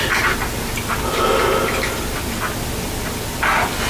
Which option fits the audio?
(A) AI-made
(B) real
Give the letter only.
B